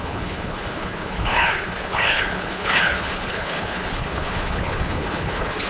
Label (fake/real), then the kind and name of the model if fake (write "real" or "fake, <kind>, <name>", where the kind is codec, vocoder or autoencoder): fake, codec, HILCodec